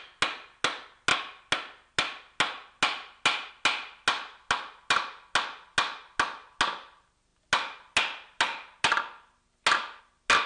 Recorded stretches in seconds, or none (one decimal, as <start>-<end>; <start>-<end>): 0.0-10.5